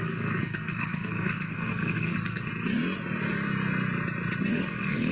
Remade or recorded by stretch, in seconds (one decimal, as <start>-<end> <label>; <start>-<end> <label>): 0.0-2.5 remade; 2.5-4.5 recorded; 4.5-5.1 remade